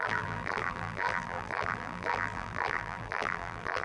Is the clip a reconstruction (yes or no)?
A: yes